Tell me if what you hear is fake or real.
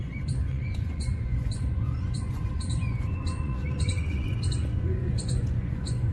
fake